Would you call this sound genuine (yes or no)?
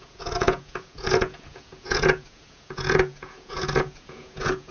no